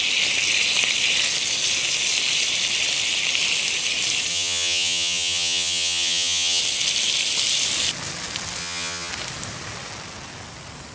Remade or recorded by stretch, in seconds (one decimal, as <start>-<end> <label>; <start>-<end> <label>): 0.0-4.3 recorded; 4.3-6.6 remade; 6.6-8.6 recorded; 8.6-9.1 remade; 9.1-10.9 recorded